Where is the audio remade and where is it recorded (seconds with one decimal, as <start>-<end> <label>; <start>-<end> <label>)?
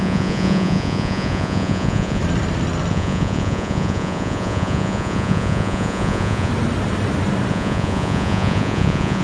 0.0-2.2 remade; 2.2-2.9 recorded; 2.9-6.5 remade; 6.5-7.5 recorded; 7.5-9.2 remade